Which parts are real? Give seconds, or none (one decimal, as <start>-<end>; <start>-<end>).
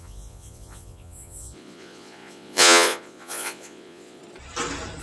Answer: 4.2-5.0